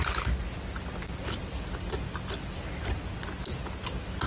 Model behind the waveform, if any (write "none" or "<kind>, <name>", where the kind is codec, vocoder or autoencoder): none